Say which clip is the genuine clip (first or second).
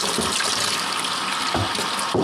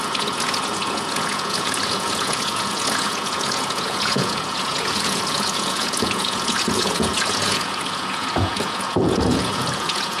first